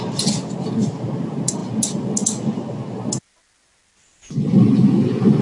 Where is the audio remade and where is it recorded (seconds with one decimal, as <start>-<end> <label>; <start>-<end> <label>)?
0.0-5.4 recorded